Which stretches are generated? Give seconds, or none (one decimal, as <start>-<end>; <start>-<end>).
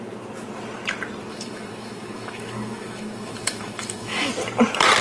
1.3-4.3